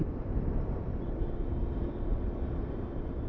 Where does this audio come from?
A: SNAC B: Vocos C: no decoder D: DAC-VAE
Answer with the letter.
C